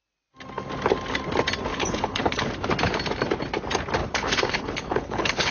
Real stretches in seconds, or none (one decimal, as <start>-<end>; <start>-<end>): 0.0-1.7; 2.5-4.0